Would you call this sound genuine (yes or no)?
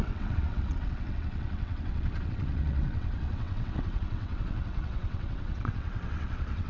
no